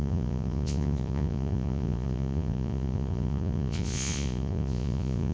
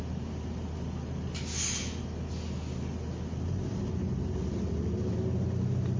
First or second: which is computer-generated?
first